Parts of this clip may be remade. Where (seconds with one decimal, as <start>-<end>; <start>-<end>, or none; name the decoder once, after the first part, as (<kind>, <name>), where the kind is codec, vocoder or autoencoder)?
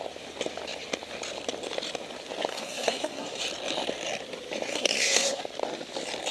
2.5-3.4 (codec, SNAC); 4.7-5.4